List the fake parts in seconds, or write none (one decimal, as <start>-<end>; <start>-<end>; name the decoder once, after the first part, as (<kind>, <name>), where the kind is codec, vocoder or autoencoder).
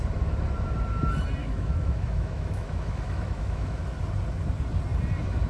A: 1.4-3.8 (autoencoder, DAC-VAE)